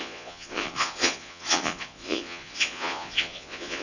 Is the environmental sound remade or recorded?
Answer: remade